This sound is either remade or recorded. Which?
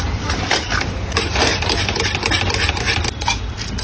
remade